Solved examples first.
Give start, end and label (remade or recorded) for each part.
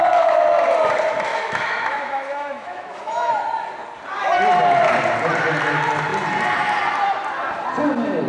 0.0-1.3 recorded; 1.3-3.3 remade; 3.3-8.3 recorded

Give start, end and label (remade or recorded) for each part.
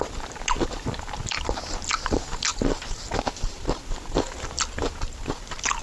0.0-5.8 recorded